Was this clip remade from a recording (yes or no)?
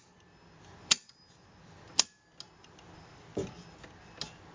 no